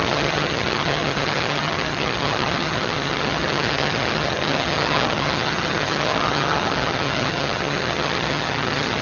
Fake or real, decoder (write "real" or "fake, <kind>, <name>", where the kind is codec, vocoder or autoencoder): fake, vocoder, HiFi-GAN